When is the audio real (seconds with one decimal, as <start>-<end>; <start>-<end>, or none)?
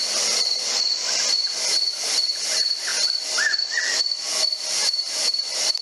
0.0-4.8